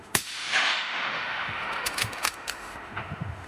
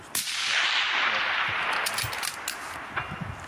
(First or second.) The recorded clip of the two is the second